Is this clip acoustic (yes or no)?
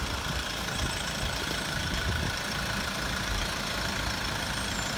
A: no